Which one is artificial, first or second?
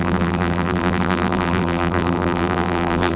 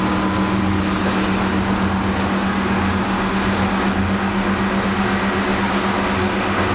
first